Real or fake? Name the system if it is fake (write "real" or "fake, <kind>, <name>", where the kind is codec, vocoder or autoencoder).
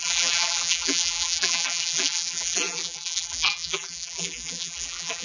fake, vocoder, BigVGAN v2